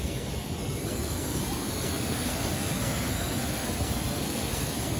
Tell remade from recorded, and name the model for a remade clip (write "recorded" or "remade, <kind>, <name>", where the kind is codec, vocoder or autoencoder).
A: remade, codec, SNAC